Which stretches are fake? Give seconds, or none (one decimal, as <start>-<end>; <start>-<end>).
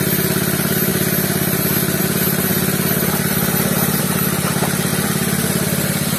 2.5-4.0; 4.9-6.2